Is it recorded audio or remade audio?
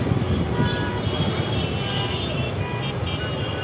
recorded